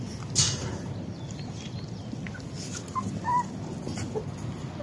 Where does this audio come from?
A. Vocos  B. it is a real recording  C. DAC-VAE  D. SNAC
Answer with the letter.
B